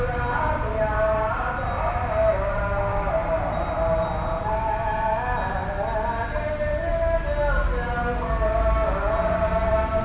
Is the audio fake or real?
real